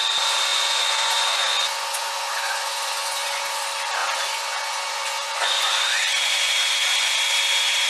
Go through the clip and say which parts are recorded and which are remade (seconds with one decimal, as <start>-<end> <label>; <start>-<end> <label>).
0.0-0.5 recorded; 0.5-3.6 remade; 3.6-4.0 recorded; 4.0-7.2 remade; 7.2-7.9 recorded